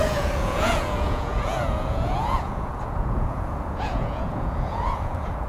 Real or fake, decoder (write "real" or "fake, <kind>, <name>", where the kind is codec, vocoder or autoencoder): fake, vocoder, Vocos